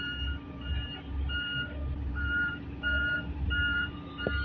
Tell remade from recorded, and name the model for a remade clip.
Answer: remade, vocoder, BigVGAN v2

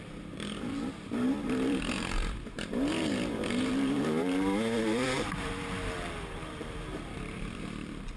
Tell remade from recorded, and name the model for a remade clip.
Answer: remade, vocoder, BigVGAN v2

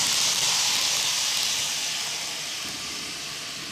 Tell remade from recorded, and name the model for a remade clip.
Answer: recorded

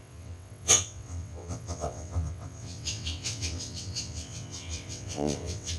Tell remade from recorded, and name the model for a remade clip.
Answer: remade, vocoder, WaveNeXt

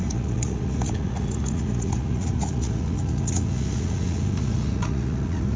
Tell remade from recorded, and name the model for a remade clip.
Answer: remade, vocoder, Vocos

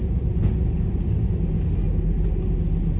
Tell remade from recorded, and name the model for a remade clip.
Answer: recorded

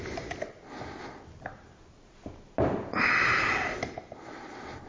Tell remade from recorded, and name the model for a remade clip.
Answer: recorded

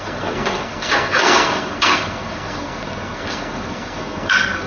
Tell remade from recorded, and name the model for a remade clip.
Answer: remade, codec, SNAC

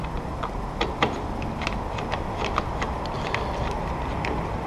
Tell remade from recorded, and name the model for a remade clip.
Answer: recorded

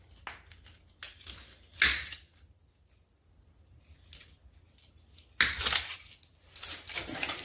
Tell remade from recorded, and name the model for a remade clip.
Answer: recorded